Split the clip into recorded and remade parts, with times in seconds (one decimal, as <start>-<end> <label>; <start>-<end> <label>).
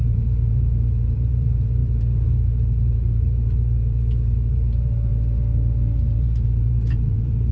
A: 0.0-5.1 remade; 5.1-5.8 recorded; 5.8-7.5 remade